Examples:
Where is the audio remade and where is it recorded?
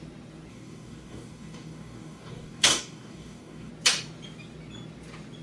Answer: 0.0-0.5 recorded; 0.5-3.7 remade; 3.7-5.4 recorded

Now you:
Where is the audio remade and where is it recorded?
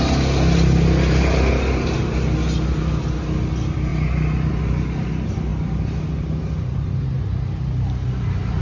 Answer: 0.0-8.6 recorded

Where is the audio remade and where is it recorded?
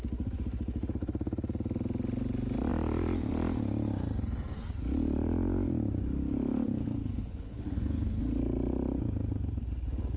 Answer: 0.0-7.0 recorded; 7.0-8.2 remade; 8.2-10.2 recorded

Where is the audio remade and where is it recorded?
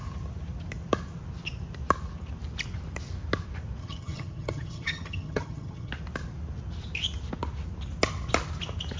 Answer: 0.0-3.8 recorded; 3.8-5.9 remade; 5.9-9.0 recorded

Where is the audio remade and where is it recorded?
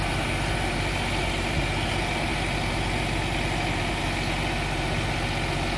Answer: 0.0-5.8 recorded